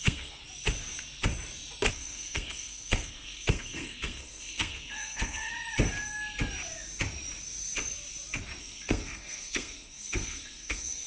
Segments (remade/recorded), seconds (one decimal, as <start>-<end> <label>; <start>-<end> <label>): 0.0-0.4 remade; 0.4-1.9 recorded; 1.9-5.5 remade; 5.5-8.6 recorded; 8.6-11.1 remade